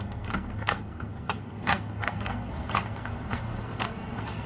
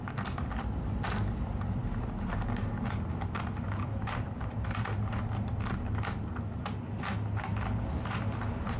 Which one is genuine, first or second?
second